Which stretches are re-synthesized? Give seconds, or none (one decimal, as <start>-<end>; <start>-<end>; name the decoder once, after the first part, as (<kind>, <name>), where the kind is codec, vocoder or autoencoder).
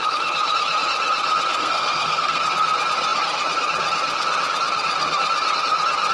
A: 1.5-2.4 (codec, SNAC)